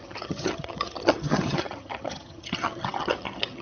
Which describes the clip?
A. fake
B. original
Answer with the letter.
A